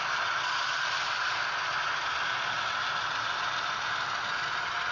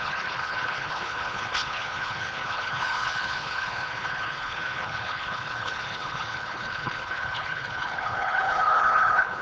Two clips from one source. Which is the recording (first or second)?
first